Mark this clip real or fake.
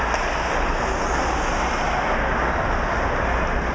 real